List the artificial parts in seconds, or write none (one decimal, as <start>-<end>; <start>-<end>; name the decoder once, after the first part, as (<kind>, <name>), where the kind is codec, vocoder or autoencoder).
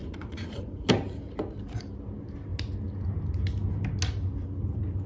0.0-0.9 (vocoder, Vocos)